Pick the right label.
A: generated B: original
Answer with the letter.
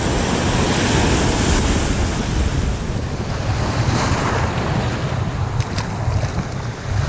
B